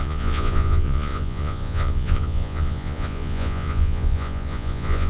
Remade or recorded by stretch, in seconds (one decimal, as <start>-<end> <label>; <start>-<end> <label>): 0.0-5.1 remade